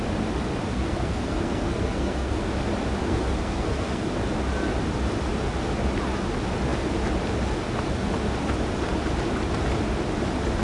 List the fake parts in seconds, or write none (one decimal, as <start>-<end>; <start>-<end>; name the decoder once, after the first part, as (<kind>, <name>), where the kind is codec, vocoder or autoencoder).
0.7-2.5 (codec, SNAC); 3.0-4.0